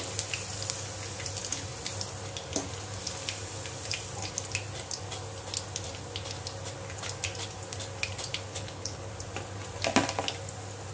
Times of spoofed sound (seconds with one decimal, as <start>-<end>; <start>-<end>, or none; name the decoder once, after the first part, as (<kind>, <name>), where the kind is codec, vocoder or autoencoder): 8.5-9.1 (codec, HILCodec)